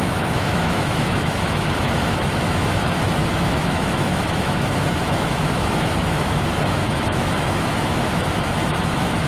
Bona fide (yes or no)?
no